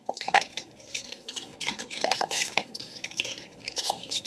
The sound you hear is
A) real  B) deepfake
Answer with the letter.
B